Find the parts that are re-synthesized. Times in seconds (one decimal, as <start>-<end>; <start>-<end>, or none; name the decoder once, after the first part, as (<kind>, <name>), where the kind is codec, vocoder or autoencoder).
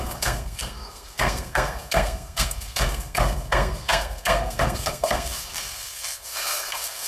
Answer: 0.0-7.1 (codec, SNAC)